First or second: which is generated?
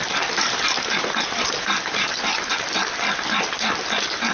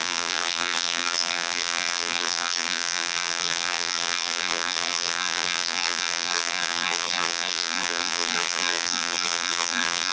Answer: second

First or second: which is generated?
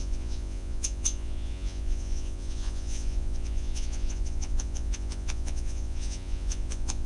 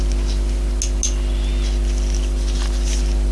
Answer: first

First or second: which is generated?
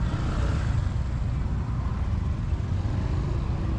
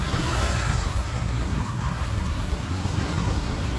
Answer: second